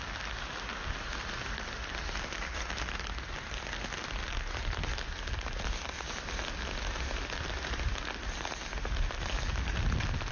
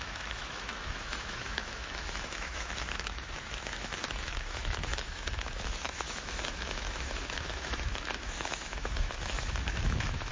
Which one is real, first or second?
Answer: first